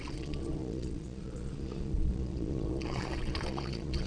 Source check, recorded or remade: remade